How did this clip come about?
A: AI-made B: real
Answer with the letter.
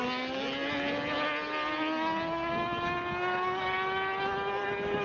B